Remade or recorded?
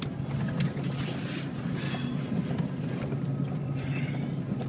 recorded